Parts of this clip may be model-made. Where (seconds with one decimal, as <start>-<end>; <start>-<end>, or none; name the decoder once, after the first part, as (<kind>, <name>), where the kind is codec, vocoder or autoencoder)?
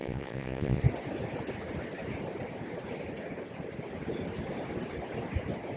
0.0-0.8 (vocoder, Vocos)